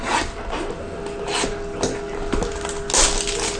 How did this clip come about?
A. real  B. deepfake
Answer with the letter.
A